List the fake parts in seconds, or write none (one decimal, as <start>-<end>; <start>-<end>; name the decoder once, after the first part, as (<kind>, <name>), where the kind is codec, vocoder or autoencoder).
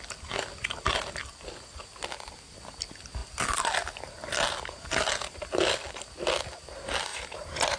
7.1-7.8 (vocoder, BigVGAN v2)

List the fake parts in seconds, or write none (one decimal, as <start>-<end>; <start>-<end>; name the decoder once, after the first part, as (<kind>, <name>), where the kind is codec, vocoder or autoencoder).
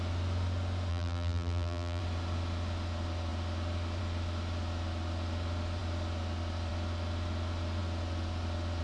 0.9-2.0 (vocoder, BigVGAN v2)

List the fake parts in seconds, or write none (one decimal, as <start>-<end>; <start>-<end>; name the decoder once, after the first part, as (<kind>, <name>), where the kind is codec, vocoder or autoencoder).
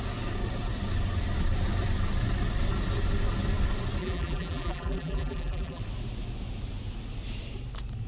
4.0-5.8 (vocoder, BigVGAN v2)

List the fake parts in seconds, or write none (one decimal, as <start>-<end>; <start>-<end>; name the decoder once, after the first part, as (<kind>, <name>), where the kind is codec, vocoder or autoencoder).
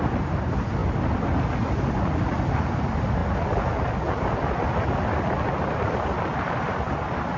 0.8-1.9 (vocoder, BigVGAN v2)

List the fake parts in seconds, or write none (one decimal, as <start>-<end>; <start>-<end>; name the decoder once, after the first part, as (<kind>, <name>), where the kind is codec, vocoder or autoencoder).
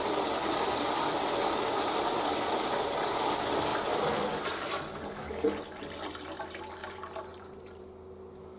6.8-7.8 (vocoder, BigVGAN v2)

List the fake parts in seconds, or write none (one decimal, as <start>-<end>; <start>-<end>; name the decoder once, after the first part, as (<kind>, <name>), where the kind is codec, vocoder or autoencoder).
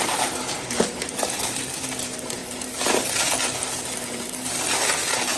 0.0-2.4 (vocoder, BigVGAN v2)